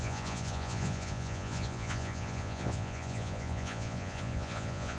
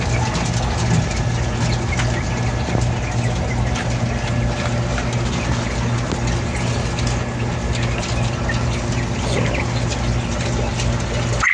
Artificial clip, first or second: first